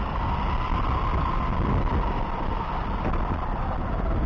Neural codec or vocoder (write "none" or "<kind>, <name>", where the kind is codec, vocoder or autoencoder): none